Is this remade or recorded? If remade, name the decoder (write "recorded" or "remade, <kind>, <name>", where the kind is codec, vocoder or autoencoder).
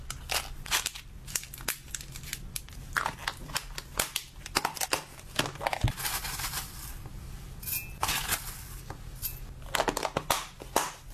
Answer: recorded